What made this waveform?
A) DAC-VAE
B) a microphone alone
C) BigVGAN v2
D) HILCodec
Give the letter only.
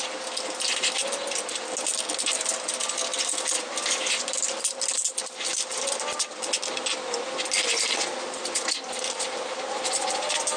B